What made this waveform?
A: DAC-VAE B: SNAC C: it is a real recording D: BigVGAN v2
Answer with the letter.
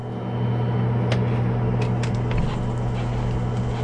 C